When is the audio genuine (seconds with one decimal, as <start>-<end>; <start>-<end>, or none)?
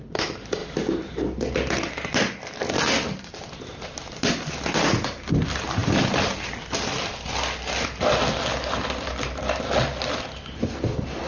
0.0-11.3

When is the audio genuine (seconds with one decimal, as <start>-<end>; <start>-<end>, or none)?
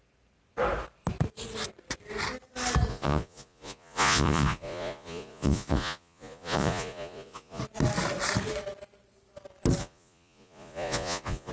0.0-2.9; 7.6-9.8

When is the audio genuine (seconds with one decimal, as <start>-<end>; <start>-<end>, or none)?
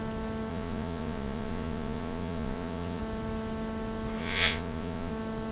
0.0-0.5; 3.0-4.2; 5.1-5.5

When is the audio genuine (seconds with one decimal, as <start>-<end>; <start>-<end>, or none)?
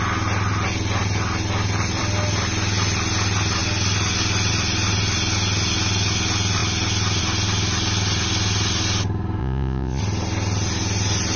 0.0-9.4; 10.0-11.4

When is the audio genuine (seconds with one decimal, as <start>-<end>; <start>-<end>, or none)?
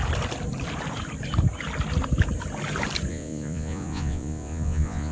0.0-3.1